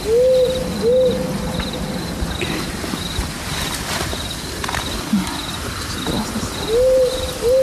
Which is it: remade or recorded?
recorded